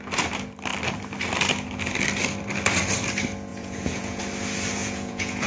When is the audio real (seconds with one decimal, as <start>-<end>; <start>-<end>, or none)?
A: 0.0-3.5; 4.2-4.8

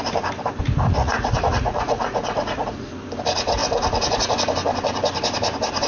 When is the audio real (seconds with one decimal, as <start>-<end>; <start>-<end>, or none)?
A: 0.0-1.0; 2.9-5.9

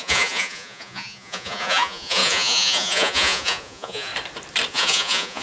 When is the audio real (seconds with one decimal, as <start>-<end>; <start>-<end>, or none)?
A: 4.1-4.7

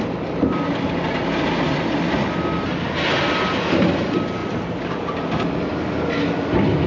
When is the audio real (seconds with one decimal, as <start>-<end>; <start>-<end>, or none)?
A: 0.0-6.9

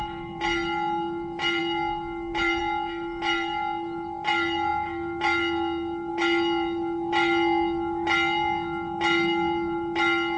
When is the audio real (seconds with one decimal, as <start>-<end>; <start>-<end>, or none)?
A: 0.0-10.4

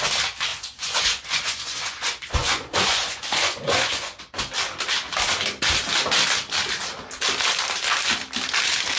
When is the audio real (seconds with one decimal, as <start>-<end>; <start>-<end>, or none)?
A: 0.0-0.5; 4.2-9.0

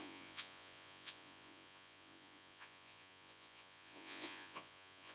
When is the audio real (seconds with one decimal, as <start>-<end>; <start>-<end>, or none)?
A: none